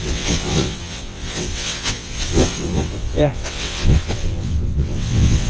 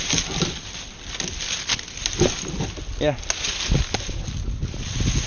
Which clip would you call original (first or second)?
second